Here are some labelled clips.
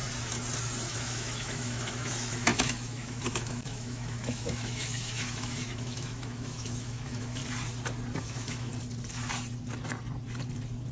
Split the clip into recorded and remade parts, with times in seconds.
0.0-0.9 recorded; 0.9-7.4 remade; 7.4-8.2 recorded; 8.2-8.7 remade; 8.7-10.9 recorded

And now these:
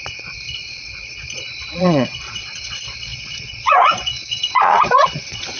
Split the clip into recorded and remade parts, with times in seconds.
0.0-5.6 remade